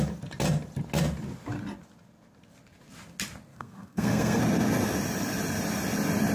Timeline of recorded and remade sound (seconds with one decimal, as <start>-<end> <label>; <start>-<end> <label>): 0.0-3.5 recorded; 3.5-4.4 remade; 4.4-6.3 recorded